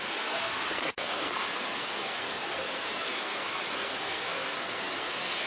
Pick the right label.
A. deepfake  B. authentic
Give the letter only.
A